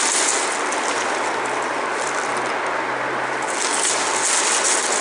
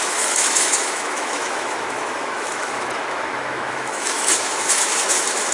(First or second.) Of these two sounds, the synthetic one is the second